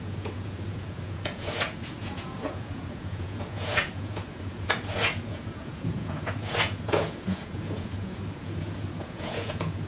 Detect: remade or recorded remade